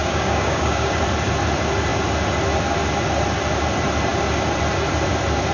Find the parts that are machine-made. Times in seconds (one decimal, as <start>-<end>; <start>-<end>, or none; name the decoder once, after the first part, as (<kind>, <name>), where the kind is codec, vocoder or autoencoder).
0.0-1.0 (codec, DAC)